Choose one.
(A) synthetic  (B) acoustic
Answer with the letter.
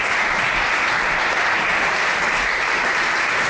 B